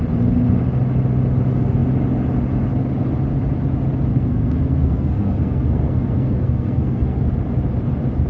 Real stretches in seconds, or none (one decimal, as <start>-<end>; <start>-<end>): 0.0-4.1; 7.2-8.3